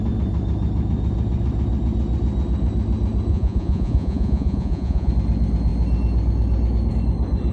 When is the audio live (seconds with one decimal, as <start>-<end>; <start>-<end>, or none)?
0.0-3.3; 5.1-7.5